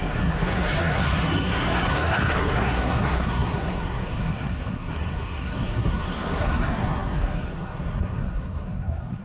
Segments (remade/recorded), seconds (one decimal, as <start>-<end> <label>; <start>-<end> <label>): 0.0-9.2 remade